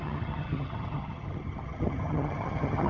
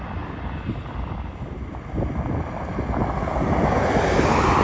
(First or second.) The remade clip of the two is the first